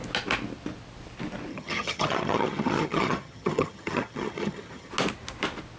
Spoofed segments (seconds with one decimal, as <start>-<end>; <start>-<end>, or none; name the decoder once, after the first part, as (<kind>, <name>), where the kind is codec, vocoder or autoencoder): 1.5-4.9 (vocoder, HiFi-GAN)